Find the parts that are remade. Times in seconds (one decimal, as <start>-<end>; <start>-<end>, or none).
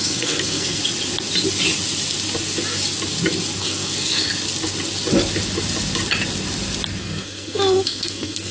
0.0-0.8; 3.6-4.3; 7.0-8.5